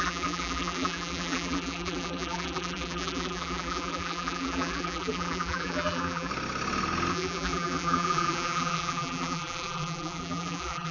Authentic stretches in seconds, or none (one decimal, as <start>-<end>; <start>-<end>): 6.3-7.1